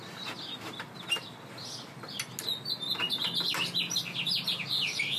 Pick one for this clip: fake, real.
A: real